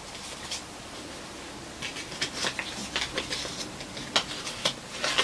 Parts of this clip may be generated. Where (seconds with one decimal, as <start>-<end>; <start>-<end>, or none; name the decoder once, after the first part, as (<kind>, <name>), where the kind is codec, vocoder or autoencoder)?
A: none